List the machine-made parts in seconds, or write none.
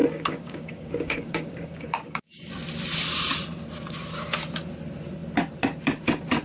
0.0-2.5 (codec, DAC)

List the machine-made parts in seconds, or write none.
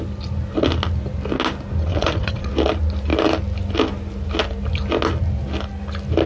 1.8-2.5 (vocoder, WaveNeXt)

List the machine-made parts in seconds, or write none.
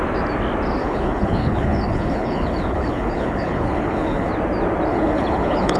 0.8-4.3 (codec, HILCodec); 4.9-5.8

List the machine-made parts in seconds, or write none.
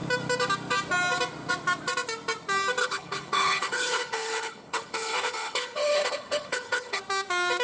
2.8-7.0 (codec, HILCodec)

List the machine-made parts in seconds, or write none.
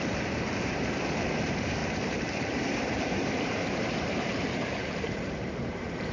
0.0-6.1 (vocoder, BigVGAN v2)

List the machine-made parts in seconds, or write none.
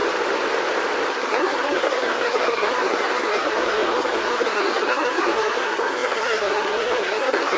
1.1-7.6 (codec, SNAC)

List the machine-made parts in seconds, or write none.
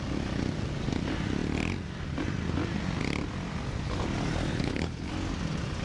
4.5-5.1 (codec, HILCodec)